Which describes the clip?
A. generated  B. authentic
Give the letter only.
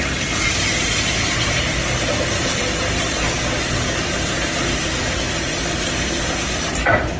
A